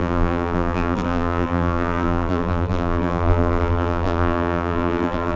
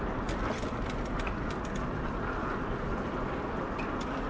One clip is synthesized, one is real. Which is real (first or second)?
second